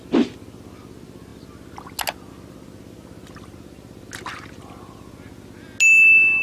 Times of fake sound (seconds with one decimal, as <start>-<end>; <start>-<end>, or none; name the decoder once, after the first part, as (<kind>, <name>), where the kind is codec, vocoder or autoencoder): none

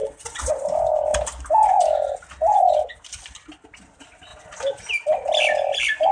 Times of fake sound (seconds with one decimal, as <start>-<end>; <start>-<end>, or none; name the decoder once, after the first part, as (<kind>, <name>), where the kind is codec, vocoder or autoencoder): 0.0-0.5 (vocoder, WaveNeXt)

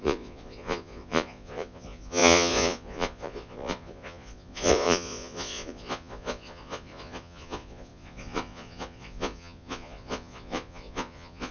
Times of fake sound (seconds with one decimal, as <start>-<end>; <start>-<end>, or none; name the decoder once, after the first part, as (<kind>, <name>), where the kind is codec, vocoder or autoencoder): 0.0-11.5 (vocoder, Vocos)

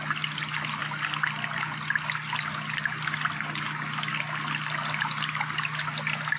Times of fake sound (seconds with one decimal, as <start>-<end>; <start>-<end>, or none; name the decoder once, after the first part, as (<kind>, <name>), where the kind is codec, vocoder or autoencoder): none